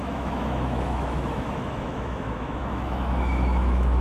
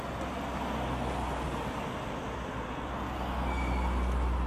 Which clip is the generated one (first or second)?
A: first